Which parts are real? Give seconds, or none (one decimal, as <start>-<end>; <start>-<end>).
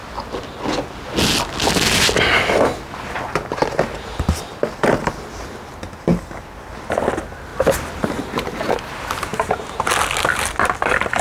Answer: 0.0-9.3; 9.9-11.2